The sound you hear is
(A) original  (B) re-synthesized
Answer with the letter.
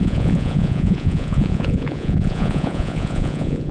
B